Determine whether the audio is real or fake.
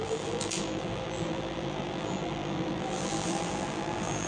fake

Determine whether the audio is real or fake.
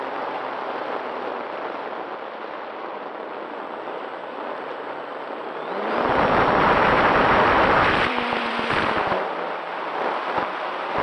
fake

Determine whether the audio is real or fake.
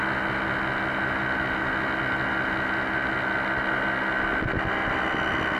real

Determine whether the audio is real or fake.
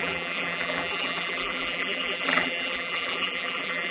fake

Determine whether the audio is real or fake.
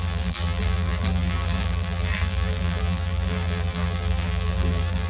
fake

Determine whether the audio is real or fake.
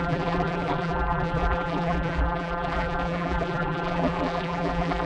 fake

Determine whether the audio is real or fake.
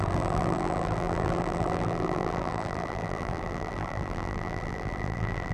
fake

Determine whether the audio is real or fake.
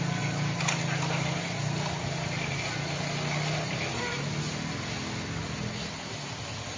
real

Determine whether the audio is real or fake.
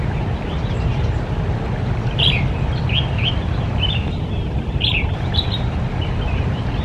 fake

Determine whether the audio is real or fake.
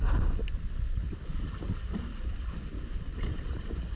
real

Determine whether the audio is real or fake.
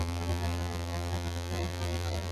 fake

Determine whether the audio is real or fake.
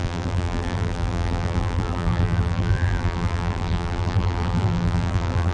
fake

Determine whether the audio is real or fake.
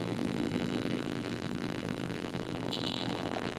fake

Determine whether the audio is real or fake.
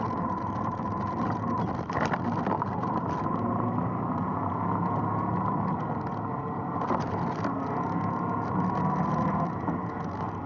real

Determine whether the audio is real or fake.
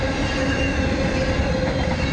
real